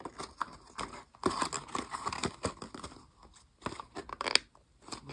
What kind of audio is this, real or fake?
real